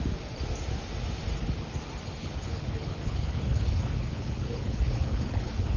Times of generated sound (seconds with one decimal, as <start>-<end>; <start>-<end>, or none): 2.2-5.8